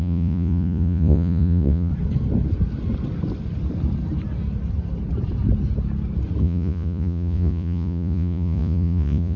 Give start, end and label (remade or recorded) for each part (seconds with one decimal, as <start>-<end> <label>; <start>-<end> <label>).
0.0-1.9 remade; 1.9-6.4 recorded; 6.4-9.4 remade